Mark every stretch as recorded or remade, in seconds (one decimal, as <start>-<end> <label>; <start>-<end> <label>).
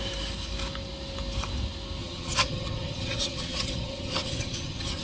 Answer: 0.0-2.0 recorded; 2.0-5.0 remade